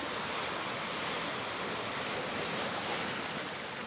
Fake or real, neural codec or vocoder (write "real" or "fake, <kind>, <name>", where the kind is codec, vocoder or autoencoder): real